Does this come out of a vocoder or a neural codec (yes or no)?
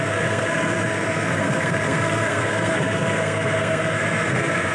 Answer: yes